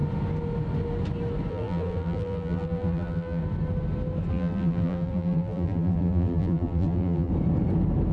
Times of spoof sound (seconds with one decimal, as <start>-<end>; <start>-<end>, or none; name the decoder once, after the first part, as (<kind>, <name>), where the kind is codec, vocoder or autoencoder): 1.5-3.4 (vocoder, BigVGAN v2); 4.3-7.3